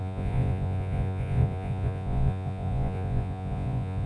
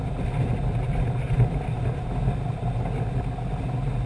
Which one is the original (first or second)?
second